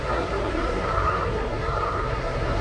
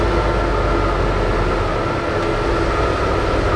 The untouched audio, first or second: second